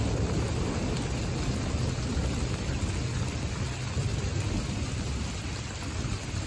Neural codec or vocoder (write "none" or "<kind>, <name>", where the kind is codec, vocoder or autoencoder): none